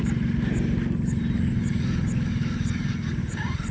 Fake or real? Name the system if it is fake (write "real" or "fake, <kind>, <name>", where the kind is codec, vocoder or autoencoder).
real